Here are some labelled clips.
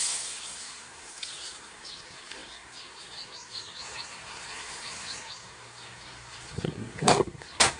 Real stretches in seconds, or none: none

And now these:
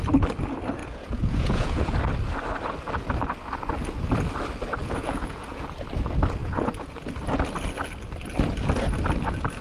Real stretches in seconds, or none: 0.0-0.8; 2.0-4.8; 5.6-6.4; 7.1-9.6

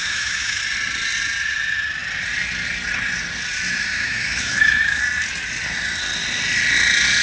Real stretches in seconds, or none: 0.6-3.9; 5.0-7.2

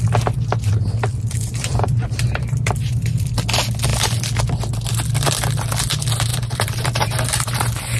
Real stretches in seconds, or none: 0.0-1.1; 3.3-6.3

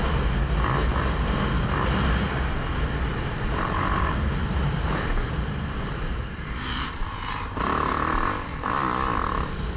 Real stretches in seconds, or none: 0.0-3.1; 7.6-9.8

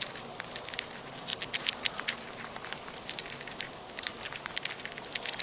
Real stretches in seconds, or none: 0.0-1.3; 4.5-5.4

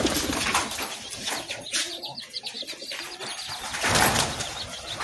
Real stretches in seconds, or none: 0.0-1.7; 2.4-5.0